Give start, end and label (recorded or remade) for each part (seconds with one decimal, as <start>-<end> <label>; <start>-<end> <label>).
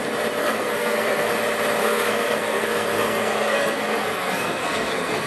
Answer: 0.0-0.4 recorded; 0.4-1.3 remade; 1.3-1.8 recorded; 1.8-5.3 remade